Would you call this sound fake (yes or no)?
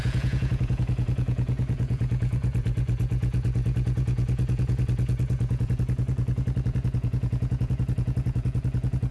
yes